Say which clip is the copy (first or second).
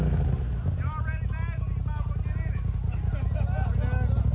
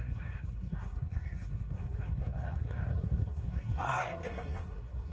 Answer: second